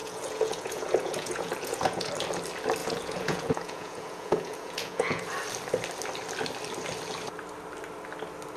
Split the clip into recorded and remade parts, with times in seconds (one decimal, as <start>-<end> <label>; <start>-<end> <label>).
0.0-2.1 remade; 2.1-2.8 recorded; 2.8-5.2 remade; 5.2-8.6 recorded